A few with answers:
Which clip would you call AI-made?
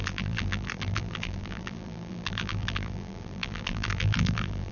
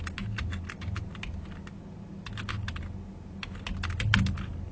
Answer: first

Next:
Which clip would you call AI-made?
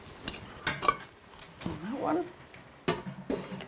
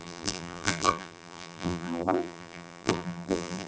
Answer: second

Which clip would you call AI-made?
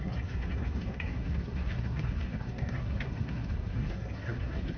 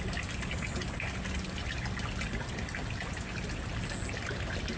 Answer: first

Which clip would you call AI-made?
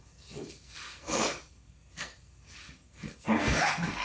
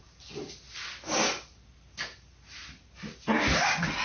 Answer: first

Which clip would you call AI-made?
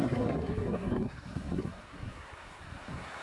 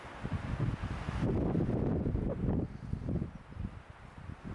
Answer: first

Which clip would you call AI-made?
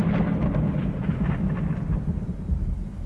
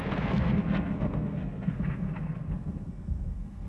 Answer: second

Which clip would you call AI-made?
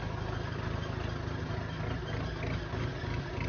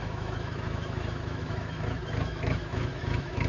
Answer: second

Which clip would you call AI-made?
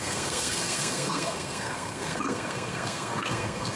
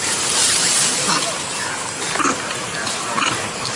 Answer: first